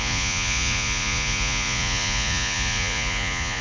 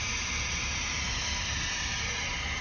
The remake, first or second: first